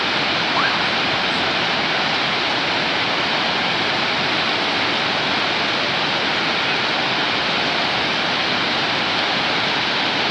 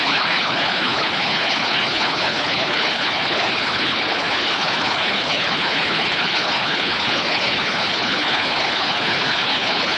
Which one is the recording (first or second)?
first